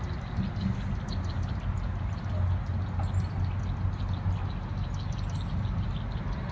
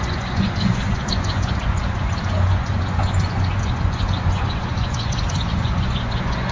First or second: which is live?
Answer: first